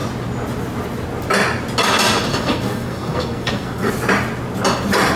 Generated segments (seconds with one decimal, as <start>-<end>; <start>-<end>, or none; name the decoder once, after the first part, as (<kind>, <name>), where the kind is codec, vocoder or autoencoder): 2.3-3.9 (codec, SNAC)

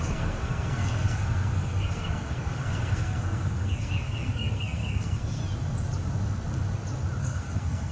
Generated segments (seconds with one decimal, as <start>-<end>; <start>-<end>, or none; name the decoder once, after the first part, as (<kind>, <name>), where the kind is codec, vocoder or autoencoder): 0.0-5.4 (codec, SNAC); 7.2-7.9

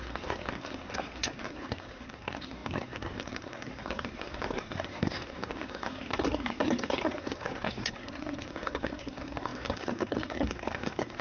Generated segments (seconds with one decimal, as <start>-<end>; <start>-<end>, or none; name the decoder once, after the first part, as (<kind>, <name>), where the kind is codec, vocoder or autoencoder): 0.0-11.2 (codec, SNAC)

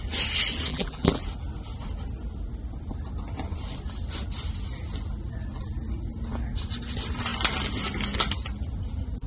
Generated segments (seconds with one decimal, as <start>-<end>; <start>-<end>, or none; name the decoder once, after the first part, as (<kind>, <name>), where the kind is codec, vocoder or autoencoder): 0.7-1.2 (vocoder, BigVGAN v2)

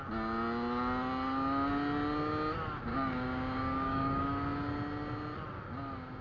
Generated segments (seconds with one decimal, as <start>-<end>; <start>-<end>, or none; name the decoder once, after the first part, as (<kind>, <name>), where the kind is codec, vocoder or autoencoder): 2.9-4.2 (codec, DAC)

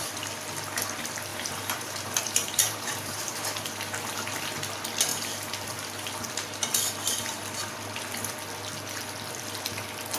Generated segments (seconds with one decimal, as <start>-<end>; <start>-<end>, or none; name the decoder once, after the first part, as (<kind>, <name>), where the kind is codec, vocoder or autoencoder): 1.3-3.7 (vocoder, BigVGAN v2)